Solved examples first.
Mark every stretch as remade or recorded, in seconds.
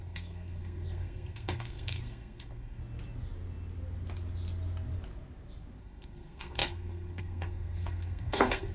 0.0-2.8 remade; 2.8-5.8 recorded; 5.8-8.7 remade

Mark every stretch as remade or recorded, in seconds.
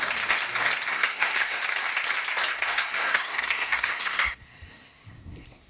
0.0-0.9 recorded; 0.9-1.6 remade; 1.6-2.5 recorded; 2.5-5.7 remade